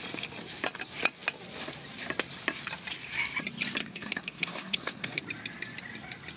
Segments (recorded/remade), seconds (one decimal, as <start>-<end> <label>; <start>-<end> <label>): 0.0-3.8 recorded; 3.8-5.2 remade; 5.2-6.4 recorded